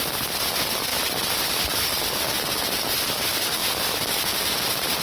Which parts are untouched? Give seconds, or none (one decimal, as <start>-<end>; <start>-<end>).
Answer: 0.0-5.0